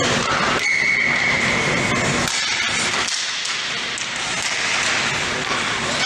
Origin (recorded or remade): recorded